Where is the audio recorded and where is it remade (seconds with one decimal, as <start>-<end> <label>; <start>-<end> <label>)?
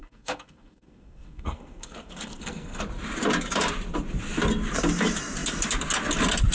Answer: 0.0-2.8 remade; 2.8-6.5 recorded